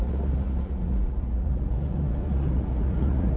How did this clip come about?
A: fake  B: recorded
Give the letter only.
A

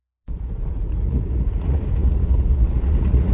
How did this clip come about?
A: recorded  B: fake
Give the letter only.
B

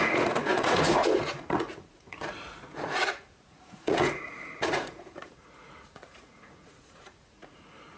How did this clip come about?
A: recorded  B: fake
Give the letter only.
B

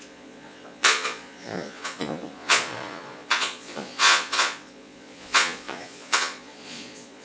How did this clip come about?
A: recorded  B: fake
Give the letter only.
B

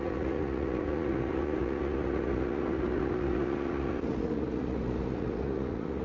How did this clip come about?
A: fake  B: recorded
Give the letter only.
A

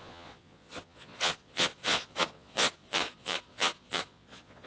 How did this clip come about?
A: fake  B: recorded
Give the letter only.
A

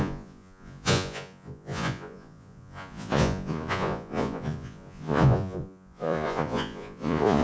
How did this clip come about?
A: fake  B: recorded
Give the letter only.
A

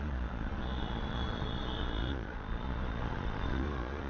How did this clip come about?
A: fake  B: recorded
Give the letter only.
A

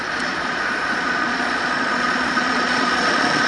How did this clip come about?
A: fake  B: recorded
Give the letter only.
A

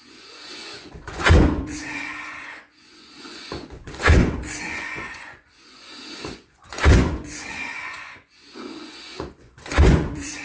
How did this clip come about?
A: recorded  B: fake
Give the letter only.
B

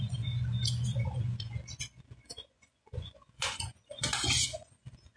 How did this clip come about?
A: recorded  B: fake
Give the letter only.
B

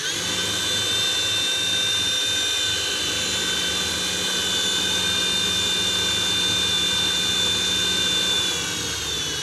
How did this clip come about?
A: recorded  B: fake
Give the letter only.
A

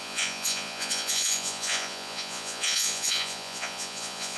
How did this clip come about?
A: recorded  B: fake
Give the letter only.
B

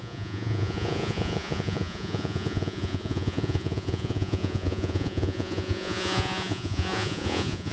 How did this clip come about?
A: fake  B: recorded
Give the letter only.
A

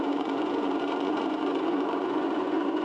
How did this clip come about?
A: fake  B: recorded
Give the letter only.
A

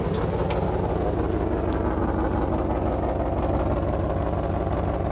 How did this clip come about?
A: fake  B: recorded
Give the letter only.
B